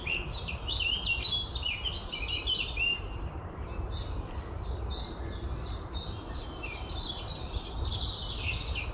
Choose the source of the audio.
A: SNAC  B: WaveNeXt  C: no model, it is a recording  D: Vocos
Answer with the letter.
C